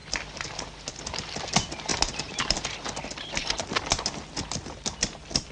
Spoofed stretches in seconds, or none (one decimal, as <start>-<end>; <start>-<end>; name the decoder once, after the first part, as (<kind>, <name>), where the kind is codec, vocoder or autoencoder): none